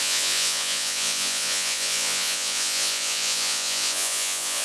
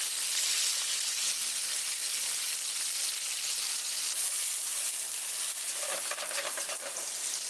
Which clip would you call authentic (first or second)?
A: second